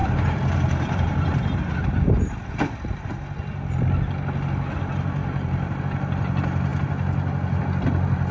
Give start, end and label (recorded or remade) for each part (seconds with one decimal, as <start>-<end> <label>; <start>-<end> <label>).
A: 0.0-1.7 remade; 1.7-5.2 recorded; 5.2-5.8 remade; 5.8-8.3 recorded